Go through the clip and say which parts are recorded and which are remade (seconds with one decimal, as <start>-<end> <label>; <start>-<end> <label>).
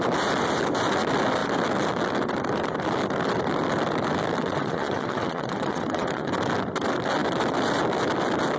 0.0-4.4 recorded; 4.4-6.3 remade; 6.3-8.6 recorded